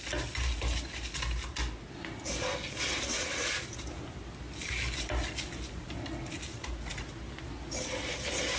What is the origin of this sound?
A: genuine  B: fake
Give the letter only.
A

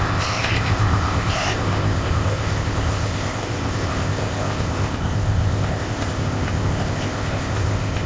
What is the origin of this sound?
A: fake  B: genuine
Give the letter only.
A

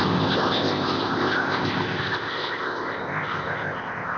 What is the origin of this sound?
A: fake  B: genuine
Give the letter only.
A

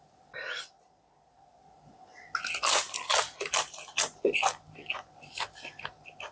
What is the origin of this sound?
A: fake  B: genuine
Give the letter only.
B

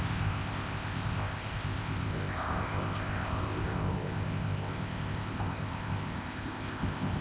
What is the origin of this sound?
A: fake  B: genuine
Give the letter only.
A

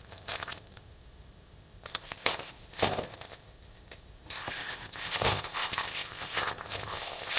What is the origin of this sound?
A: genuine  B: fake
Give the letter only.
B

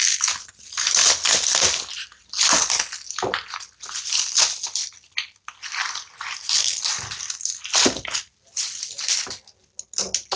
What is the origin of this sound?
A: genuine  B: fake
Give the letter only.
A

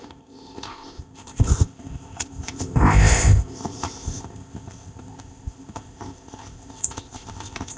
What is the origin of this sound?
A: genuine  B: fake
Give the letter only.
B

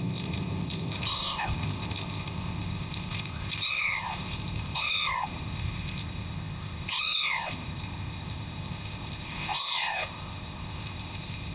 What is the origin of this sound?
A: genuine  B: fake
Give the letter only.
B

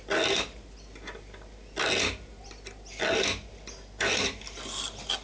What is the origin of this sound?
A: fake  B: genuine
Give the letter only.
B